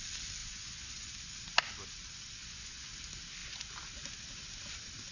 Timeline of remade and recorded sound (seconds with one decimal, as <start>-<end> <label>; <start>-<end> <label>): 0.0-0.4 recorded; 0.4-1.1 remade; 1.1-2.4 recorded; 2.4-2.9 remade; 2.9-5.1 recorded